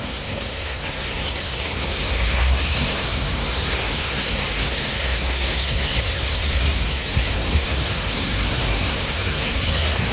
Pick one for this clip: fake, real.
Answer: fake